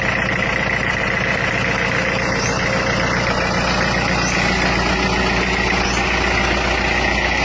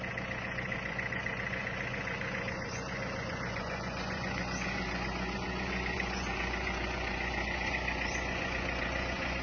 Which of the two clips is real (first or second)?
first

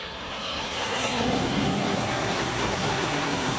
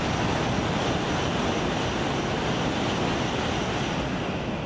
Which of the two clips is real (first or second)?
second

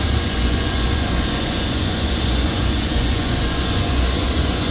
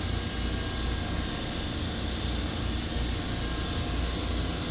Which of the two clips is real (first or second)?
second